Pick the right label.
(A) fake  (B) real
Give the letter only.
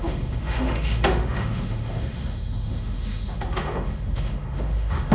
A